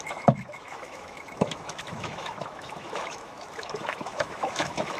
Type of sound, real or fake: fake